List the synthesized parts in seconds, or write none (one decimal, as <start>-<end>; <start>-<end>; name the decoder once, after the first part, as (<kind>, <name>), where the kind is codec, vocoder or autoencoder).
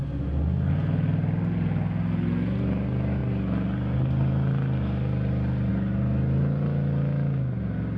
none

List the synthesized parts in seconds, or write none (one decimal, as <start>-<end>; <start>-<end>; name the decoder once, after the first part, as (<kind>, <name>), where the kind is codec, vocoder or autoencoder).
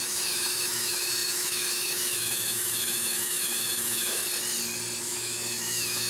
0.0-4.2 (autoencoder, DAC-VAE); 5.0-6.1